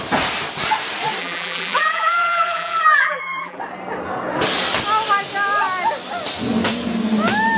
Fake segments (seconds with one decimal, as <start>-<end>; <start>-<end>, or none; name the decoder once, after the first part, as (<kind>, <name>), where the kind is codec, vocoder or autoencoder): 1.2-3.6 (vocoder, BigVGAN v2)